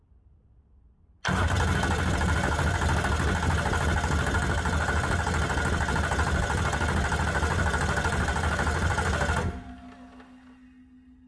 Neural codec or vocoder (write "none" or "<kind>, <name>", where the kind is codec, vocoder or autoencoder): none